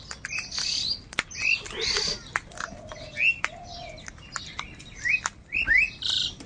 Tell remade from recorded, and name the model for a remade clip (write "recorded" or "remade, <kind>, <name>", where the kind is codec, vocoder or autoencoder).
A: recorded